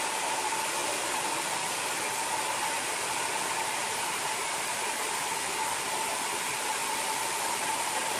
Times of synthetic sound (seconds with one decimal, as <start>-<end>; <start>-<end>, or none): 3.8-5.3